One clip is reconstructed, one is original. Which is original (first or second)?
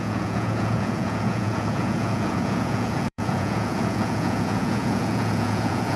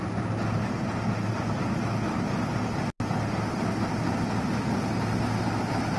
second